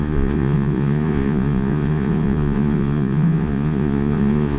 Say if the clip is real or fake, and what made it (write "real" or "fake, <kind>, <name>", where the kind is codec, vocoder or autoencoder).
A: fake, vocoder, Vocos